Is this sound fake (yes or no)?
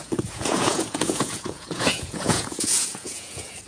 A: yes